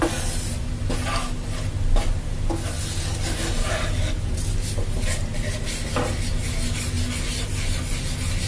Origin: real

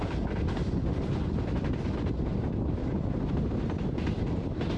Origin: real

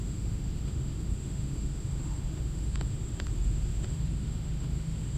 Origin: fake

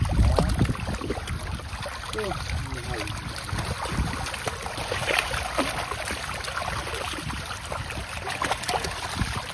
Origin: real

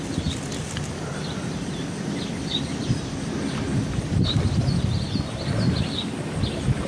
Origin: real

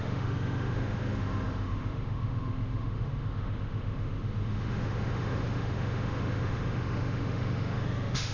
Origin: fake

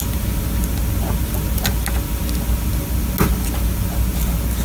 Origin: real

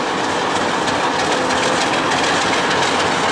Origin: real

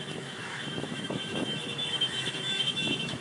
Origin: fake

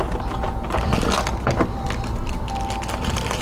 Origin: real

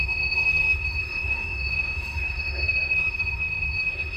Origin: fake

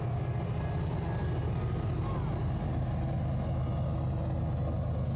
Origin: real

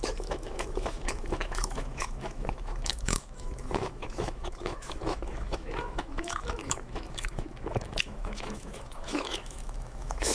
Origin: fake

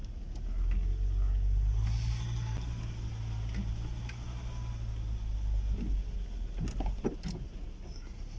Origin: real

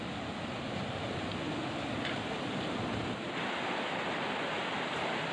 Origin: real